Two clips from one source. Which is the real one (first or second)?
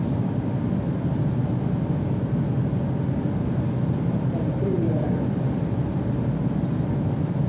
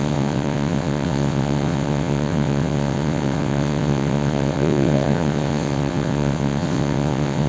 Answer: first